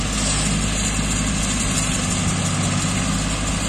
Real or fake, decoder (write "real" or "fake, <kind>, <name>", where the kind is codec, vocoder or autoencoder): real